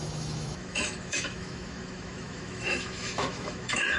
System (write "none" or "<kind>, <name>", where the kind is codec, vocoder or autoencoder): autoencoder, DAC-VAE